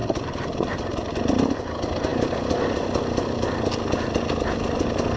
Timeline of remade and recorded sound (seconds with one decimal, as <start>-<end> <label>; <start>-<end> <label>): 0.0-5.2 recorded